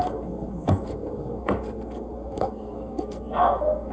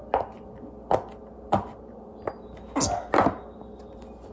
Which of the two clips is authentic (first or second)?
second